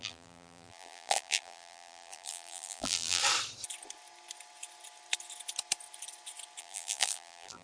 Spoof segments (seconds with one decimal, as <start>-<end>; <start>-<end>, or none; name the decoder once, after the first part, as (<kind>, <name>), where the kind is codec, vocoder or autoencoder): 0.0-3.2 (vocoder, BigVGAN v2); 6.6-7.6